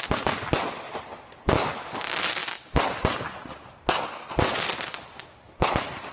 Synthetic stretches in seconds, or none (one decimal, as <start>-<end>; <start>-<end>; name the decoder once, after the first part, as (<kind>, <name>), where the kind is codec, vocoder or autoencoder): none